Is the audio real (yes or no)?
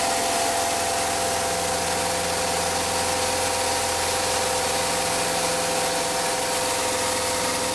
yes